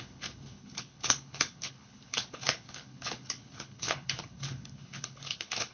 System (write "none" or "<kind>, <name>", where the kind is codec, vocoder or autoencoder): codec, HILCodec